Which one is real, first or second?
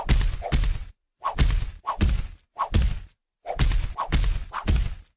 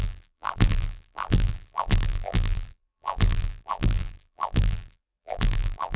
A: first